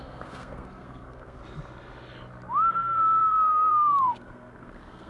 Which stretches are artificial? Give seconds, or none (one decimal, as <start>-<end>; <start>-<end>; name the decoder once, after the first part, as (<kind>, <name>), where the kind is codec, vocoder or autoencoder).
0.0-1.4 (codec, SNAC); 2.7-5.1